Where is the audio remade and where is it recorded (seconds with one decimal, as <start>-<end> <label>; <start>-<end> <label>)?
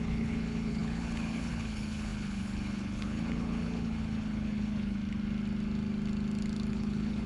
0.0-5.0 remade; 5.0-6.7 recorded; 6.7-7.3 remade